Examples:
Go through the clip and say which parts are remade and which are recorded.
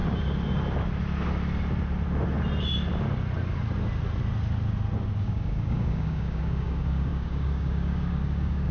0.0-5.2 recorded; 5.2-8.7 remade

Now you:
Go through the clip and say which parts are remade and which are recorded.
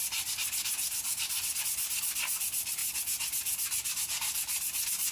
0.0-5.1 recorded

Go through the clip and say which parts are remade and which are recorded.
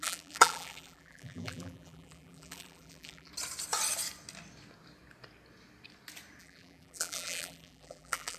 0.0-3.3 remade; 3.3-6.4 recorded; 6.4-8.4 remade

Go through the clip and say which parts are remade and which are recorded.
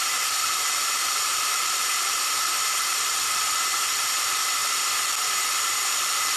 0.0-4.6 remade; 4.6-5.4 recorded; 5.4-6.4 remade